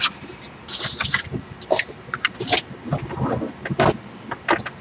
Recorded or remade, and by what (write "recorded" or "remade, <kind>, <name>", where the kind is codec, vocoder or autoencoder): recorded